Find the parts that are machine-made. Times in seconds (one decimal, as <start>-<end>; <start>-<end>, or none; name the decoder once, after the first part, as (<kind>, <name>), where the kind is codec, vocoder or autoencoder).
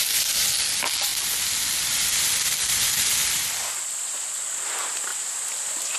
5.1-6.0 (vocoder, BigVGAN v2)